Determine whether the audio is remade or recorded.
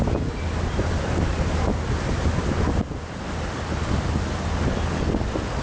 recorded